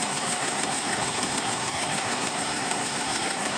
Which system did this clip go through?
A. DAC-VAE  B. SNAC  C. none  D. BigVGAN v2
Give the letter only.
B